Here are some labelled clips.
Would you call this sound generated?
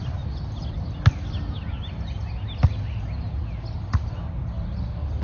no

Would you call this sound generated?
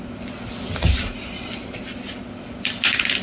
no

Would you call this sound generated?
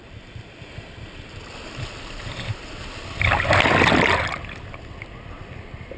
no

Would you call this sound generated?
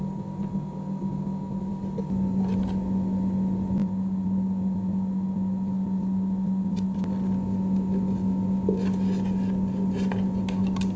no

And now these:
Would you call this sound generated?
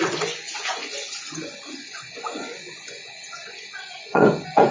yes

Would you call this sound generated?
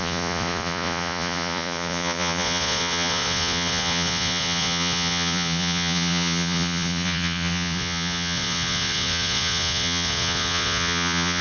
yes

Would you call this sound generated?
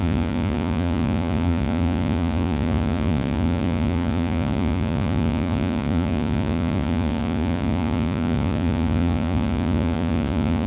yes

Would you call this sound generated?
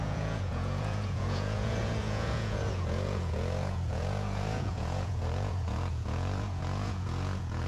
yes